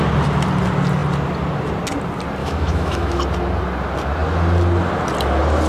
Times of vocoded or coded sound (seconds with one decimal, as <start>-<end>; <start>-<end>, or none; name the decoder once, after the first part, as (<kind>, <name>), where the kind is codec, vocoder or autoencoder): 2.4-3.2 (autoencoder, DAC-VAE)